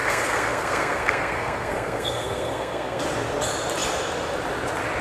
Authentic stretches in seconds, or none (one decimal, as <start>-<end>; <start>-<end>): 3.0-5.0